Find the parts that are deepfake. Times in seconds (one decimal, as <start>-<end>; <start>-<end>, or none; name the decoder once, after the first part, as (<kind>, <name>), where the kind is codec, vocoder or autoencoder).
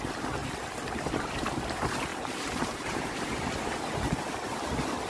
2.1-3.5 (vocoder, BigVGAN v2)